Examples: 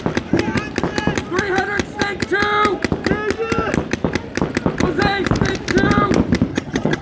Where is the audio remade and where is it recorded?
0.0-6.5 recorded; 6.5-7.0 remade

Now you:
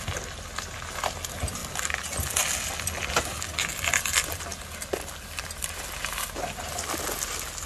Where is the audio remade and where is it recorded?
0.0-7.7 recorded